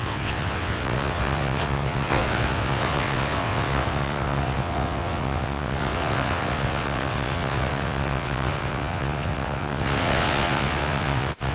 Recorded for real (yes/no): no